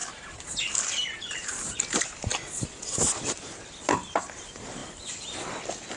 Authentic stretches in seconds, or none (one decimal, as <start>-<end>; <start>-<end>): 0.0-6.0